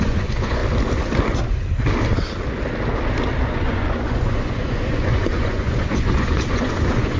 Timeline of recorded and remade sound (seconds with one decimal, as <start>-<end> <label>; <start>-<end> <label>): 0.0-0.6 remade; 0.6-3.4 recorded; 3.4-7.2 remade